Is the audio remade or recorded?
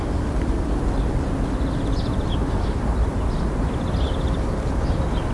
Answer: recorded